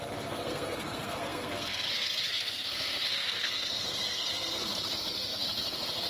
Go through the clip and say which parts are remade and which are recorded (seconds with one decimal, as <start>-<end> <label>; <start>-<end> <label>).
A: 0.0-6.1 remade